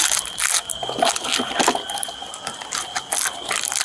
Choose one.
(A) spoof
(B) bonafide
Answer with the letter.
B